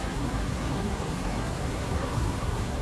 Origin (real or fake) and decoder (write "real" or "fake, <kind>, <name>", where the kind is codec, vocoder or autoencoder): fake, codec, SNAC